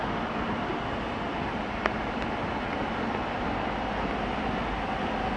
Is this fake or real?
real